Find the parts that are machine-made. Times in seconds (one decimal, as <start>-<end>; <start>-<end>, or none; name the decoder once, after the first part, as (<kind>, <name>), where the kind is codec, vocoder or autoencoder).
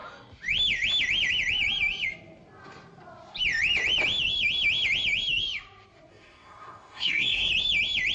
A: 6.1-7.5 (codec, SNAC)